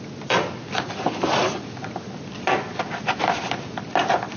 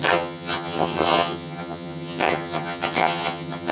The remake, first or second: second